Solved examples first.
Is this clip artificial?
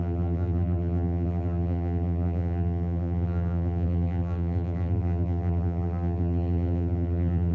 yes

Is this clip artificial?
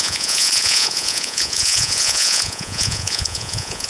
yes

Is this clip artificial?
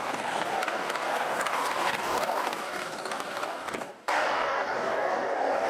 yes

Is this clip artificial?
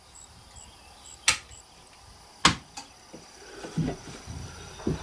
no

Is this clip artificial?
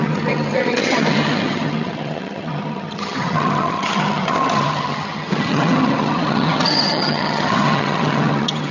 yes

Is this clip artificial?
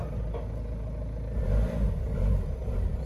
no